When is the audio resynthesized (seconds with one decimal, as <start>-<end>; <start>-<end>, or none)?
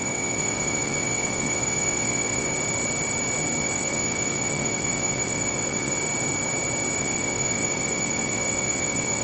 0.0-2.5; 3.6-6.0; 7.0-9.2